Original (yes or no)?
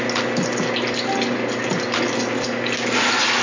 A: yes